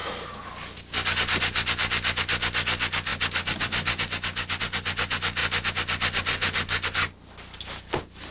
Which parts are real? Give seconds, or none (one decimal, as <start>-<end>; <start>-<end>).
0.0-8.3